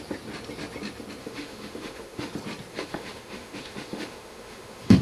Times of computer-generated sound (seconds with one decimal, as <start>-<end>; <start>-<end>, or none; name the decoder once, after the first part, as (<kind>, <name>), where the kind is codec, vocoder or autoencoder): 1.2-2.3 (autoencoder, DAC-VAE); 2.7-5.0